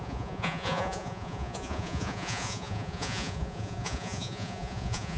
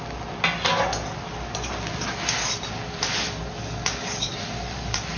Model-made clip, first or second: first